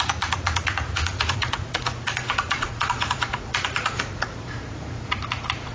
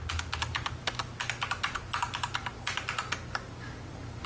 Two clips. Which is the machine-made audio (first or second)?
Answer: first